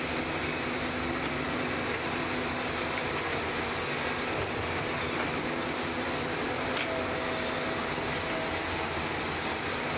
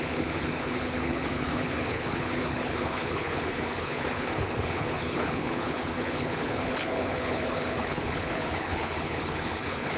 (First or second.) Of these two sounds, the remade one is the second